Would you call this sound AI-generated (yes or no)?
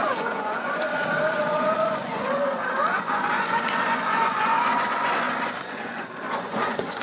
yes